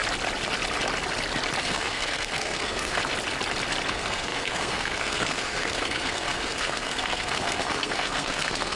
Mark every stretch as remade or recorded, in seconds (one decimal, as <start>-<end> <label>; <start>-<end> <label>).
0.0-1.6 recorded; 1.6-3.0 remade; 3.0-3.9 recorded; 3.9-8.8 remade